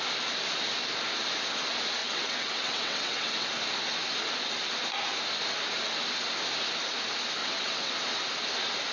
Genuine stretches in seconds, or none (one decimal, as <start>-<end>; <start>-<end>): 0.0-2.0; 3.5-7.4; 7.9-8.9